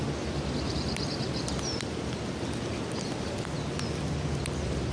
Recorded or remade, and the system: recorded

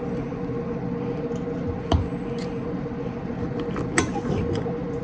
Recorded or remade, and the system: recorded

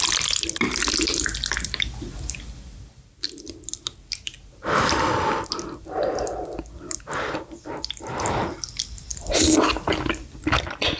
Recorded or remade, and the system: recorded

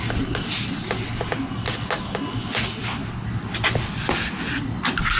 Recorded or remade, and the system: recorded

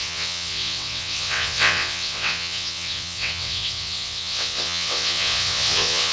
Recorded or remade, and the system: remade, vocoder, WaveNeXt